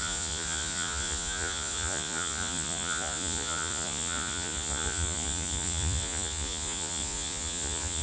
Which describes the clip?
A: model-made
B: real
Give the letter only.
A